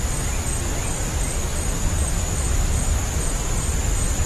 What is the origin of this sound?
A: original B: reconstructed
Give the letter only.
A